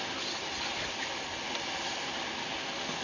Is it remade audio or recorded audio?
recorded